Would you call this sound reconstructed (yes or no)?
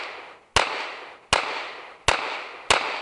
no